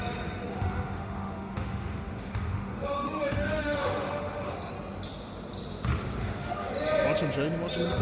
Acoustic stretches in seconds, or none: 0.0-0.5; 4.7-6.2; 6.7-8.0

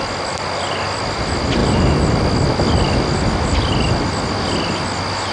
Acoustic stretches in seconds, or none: 0.0-5.3

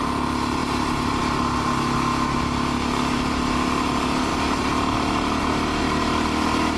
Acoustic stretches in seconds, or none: 0.0-6.8

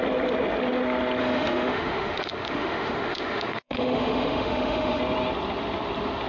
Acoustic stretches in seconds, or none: 0.0-1.2; 5.0-6.3

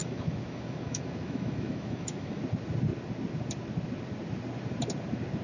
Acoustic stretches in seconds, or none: 2.4-5.4

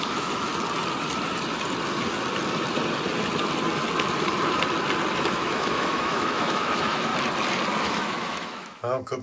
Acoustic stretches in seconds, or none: 0.5-5.3; 7.1-7.8

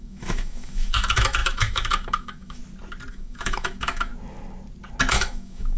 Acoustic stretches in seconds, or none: 2.6-3.1; 4.1-5.1